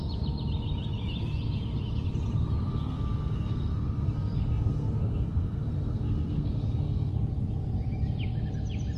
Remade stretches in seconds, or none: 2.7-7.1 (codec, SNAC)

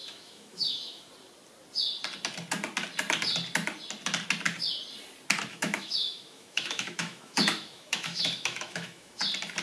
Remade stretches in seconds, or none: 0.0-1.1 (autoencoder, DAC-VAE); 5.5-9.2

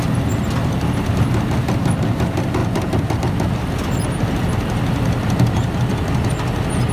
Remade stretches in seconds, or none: 2.6-3.2 (vocoder, BigVGAN v2)

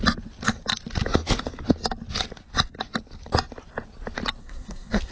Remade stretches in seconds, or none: 4.4-5.1 (codec, SNAC)

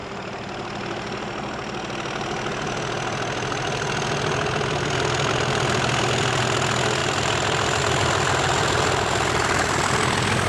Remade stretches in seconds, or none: 5.3-10.5 (vocoder, BigVGAN v2)

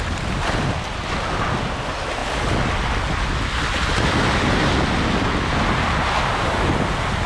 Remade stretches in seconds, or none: none